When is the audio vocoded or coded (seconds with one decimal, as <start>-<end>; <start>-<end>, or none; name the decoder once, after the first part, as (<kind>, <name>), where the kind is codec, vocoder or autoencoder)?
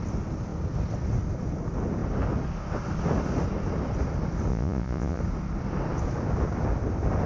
4.5-5.2 (vocoder, Vocos)